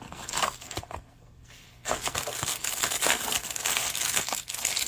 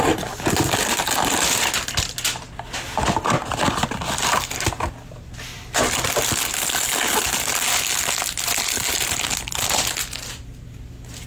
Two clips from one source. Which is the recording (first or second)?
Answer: second